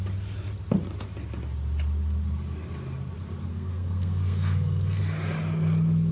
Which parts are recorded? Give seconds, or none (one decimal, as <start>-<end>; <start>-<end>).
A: 0.0-3.5; 5.0-6.1